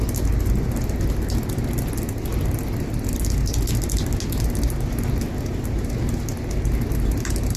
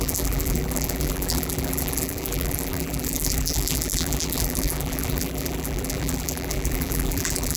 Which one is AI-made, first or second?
second